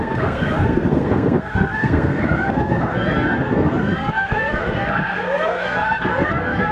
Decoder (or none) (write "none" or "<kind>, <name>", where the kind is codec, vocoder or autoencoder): codec, SNAC